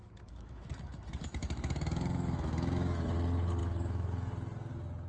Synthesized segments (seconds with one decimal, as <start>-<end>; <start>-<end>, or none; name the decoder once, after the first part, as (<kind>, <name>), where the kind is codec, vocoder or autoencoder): 0.0-3.1 (autoencoder, DAC-VAE); 3.6-4.3